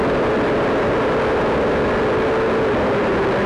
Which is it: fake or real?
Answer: real